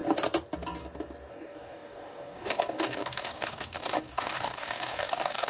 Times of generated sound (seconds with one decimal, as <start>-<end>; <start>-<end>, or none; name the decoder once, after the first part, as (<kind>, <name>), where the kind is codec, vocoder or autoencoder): 1.3-5.5 (codec, DAC)